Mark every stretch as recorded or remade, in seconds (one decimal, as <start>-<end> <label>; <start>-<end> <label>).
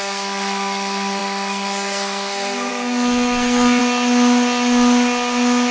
0.0-3.8 remade; 3.8-5.7 recorded